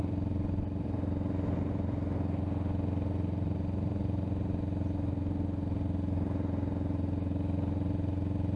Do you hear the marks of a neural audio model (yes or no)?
no